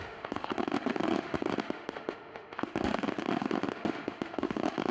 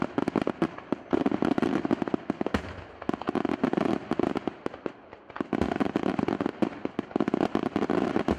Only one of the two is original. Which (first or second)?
second